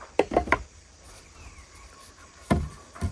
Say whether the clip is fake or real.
real